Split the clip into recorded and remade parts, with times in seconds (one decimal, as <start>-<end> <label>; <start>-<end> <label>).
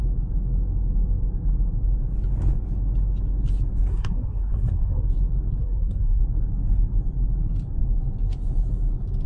0.0-3.9 recorded; 3.9-5.1 remade; 5.1-5.6 recorded; 5.6-6.2 remade; 6.2-9.3 recorded